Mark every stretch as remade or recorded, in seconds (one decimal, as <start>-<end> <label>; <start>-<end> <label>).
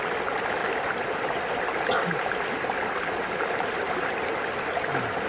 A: 0.0-5.3 recorded